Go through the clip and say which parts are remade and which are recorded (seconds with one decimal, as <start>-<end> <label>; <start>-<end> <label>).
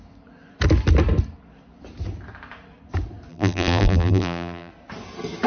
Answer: 0.0-3.3 recorded; 3.3-4.7 remade; 4.7-5.5 recorded